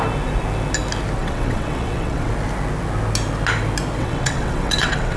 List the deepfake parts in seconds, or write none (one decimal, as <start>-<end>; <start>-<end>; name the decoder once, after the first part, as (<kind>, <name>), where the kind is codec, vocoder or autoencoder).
1.2-2.3 (vocoder, WaveNeXt); 4.0-5.2